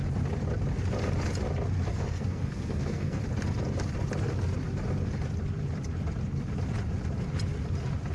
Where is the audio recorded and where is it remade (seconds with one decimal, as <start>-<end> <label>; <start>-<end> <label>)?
0.0-1.9 recorded; 1.9-3.2 remade; 3.2-8.1 recorded